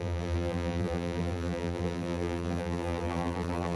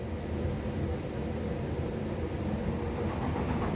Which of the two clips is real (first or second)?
second